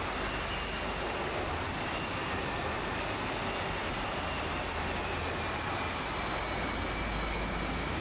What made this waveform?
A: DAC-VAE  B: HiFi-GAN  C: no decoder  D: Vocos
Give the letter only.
C